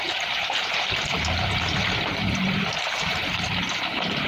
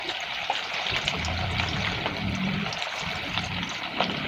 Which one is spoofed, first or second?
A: first